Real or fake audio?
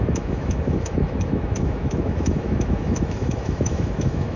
fake